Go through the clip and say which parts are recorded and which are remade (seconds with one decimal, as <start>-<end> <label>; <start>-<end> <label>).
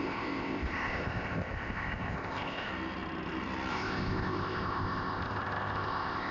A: 0.0-2.7 remade; 2.7-3.7 recorded; 3.7-6.3 remade